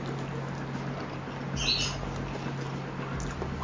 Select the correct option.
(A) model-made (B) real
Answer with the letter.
B